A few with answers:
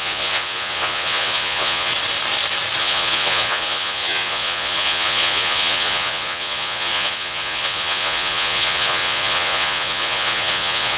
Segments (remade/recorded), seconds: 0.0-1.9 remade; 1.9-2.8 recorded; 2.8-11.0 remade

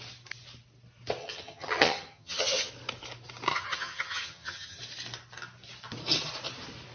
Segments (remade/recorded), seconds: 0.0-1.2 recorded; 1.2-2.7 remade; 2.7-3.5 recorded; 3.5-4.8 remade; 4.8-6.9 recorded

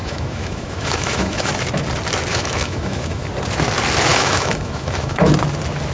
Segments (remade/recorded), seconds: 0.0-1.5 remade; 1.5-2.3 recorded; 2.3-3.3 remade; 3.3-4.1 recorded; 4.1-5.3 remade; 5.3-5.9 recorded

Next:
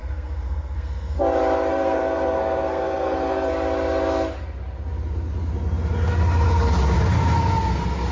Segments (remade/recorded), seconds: 0.0-1.2 remade; 1.2-1.7 recorded; 1.7-3.5 remade; 3.5-8.1 recorded

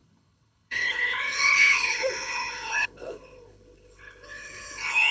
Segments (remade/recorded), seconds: 0.0-5.1 remade

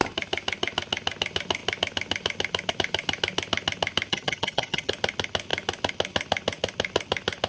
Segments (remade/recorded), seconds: 0.0-4.1 recorded; 4.1-4.9 remade; 4.9-7.5 recorded

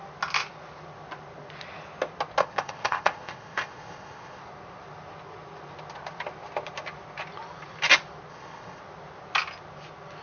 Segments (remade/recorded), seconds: 0.0-2.4 recorded; 2.4-4.4 remade; 4.4-8.3 recorded; 8.3-8.8 remade; 8.8-10.2 recorded